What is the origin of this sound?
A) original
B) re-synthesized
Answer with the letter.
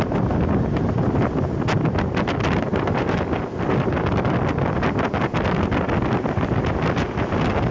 A